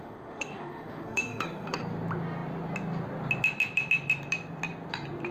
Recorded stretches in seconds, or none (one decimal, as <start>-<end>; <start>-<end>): 1.8-5.3